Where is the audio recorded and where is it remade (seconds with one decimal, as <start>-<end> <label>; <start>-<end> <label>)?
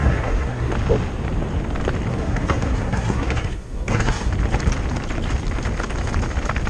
0.0-0.7 remade; 0.7-2.1 recorded; 2.1-4.3 remade; 4.3-6.7 recorded